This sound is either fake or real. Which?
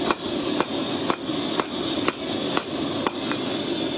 real